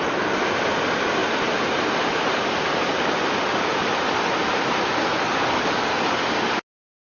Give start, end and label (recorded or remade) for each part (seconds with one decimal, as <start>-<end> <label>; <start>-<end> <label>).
0.0-5.1 recorded; 5.1-5.9 remade; 5.9-7.1 recorded